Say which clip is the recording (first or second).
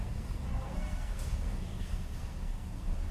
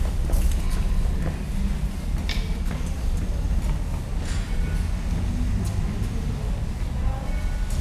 second